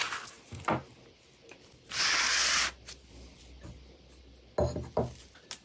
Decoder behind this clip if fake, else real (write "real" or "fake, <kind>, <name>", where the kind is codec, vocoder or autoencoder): real